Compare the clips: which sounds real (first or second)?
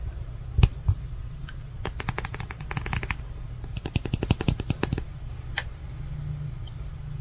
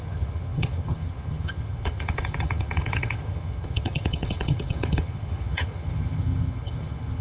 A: first